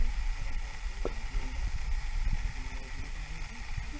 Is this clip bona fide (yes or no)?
yes